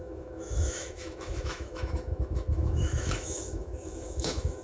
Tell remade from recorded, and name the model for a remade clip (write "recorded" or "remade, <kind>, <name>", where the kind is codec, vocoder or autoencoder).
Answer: remade, autoencoder, DAC-VAE